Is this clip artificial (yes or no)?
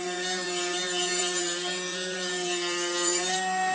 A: yes